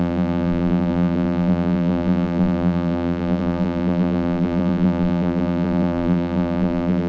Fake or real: fake